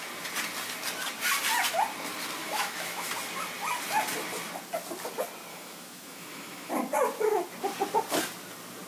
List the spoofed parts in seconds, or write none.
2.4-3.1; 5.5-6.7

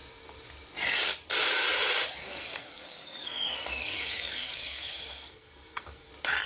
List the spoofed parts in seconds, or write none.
2.2-6.1

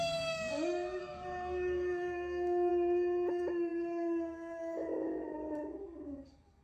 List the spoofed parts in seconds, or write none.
0.0-2.7; 3.3-6.6

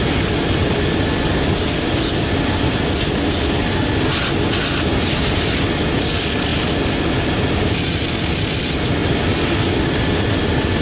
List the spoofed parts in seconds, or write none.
none

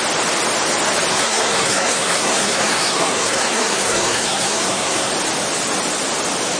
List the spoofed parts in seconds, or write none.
1.1-5.1

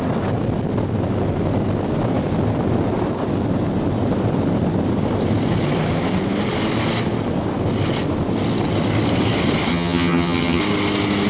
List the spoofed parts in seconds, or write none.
9.7-10.6